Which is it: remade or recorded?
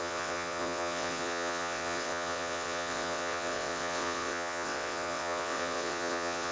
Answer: remade